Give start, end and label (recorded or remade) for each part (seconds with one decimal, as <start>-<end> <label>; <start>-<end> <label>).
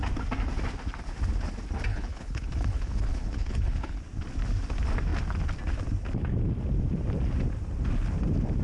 0.0-1.9 recorded; 1.9-4.0 remade; 4.0-8.6 recorded